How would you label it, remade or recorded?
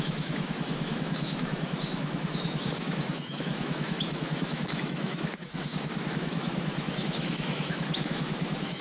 remade